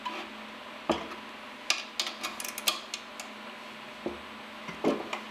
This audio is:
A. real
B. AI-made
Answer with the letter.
A